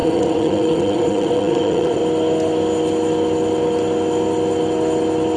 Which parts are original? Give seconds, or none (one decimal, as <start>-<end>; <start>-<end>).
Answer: 2.0-5.4